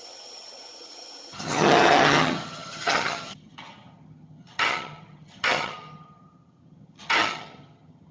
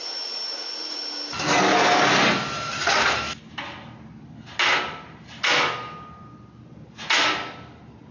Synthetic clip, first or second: first